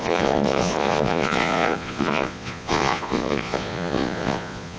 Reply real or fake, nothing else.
fake